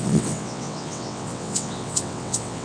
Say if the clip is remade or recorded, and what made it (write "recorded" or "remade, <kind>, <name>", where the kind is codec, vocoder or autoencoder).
remade, vocoder, WaveNeXt